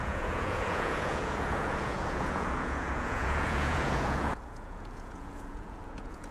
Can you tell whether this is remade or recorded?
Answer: remade